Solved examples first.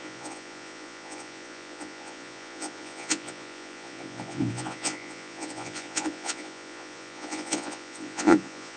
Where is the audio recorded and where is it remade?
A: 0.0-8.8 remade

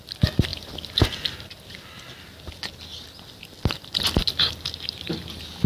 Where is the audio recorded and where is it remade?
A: 0.0-5.7 recorded

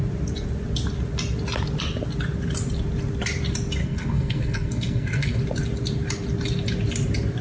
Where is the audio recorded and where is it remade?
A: 0.0-3.8 recorded; 3.8-5.4 remade; 5.4-7.4 recorded

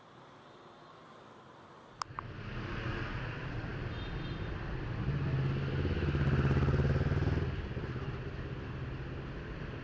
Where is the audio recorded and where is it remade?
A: 0.0-9.8 recorded

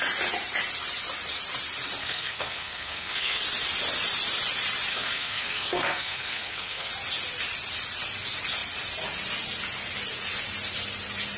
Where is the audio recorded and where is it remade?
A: 0.0-2.0 recorded; 2.0-3.4 remade; 3.4-4.9 recorded; 4.9-6.9 remade; 6.9-11.4 recorded

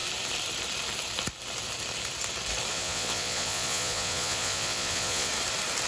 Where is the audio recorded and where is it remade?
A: 0.0-2.7 recorded; 2.7-5.3 remade; 5.3-5.9 recorded

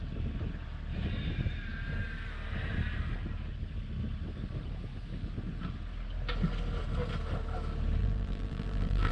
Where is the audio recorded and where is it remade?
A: 0.0-8.0 recorded; 8.0-9.1 remade

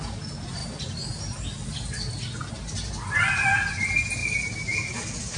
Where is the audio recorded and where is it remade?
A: 0.0-5.4 recorded